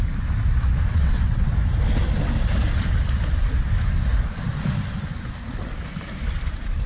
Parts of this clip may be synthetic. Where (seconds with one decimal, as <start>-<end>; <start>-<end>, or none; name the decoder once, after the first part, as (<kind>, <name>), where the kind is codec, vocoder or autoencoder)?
0.9-1.5 (vocoder, WaveNeXt)